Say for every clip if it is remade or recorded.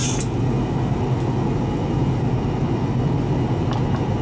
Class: recorded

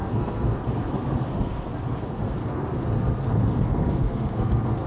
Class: remade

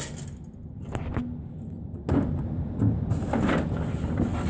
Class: recorded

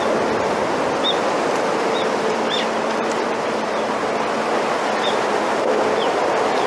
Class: recorded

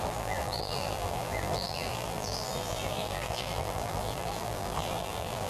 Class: remade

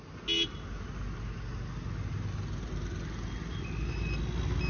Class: recorded